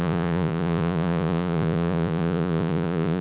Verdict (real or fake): fake